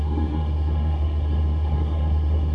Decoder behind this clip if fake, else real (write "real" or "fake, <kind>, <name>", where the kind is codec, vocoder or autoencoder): fake, codec, SNAC